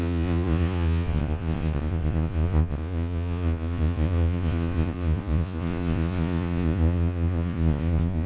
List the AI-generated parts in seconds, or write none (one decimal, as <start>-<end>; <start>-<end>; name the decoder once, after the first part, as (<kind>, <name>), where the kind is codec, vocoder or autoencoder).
0.0-8.3 (vocoder, Vocos)